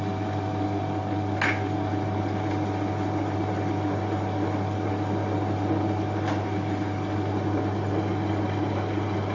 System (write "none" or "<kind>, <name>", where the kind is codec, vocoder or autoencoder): none